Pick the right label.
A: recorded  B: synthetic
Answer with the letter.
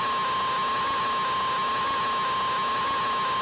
A